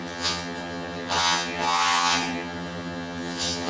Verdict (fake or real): fake